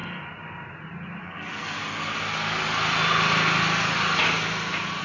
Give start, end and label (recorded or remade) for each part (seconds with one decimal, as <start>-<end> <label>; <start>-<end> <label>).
0.0-1.2 recorded; 1.2-1.8 remade; 1.8-5.0 recorded